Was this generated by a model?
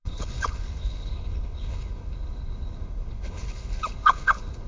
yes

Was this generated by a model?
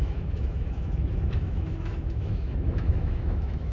yes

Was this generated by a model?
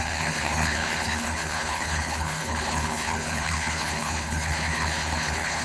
yes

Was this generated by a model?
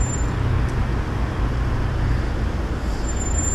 no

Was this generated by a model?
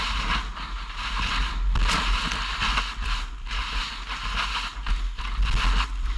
no